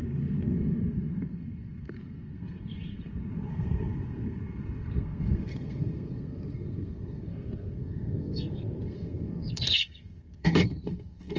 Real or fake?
fake